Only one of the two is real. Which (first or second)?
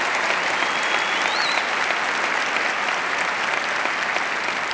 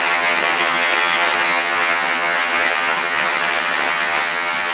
first